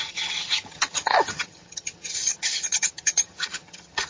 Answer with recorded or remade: remade